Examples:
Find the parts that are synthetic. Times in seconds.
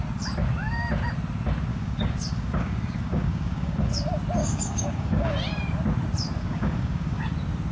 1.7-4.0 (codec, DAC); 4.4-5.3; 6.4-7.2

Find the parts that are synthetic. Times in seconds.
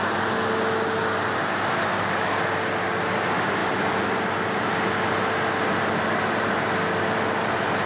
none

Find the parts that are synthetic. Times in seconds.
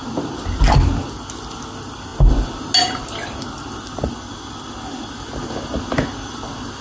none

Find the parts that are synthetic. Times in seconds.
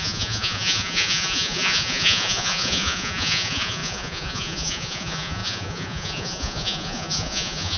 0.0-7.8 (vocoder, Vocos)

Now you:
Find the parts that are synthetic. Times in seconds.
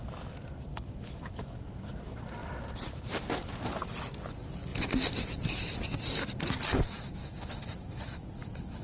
0.7-1.9 (autoencoder, DAC-VAE); 7.2-8.8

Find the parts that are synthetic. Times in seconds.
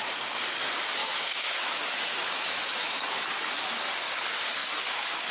1.0-3.5 (autoencoder, DAC-VAE)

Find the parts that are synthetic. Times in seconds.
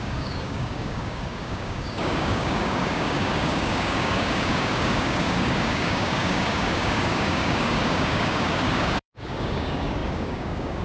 0.0-10.8 (codec, DAC)